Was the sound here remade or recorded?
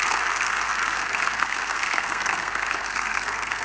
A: remade